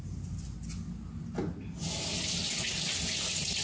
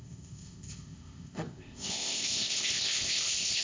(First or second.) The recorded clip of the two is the first